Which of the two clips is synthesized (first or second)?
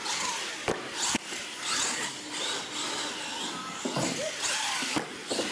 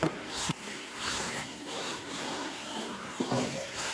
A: second